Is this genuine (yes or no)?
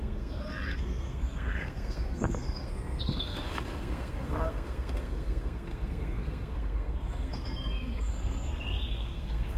no